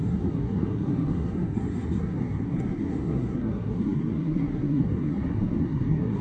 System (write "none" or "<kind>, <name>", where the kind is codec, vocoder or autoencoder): codec, SNAC